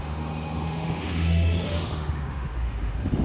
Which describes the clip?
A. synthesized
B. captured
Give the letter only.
A